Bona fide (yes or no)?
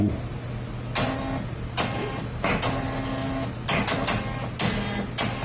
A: yes